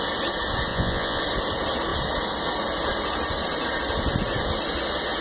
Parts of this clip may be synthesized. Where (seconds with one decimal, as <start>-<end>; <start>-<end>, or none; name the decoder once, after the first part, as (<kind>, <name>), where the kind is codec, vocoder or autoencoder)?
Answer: 0.7-1.2 (vocoder, Vocos)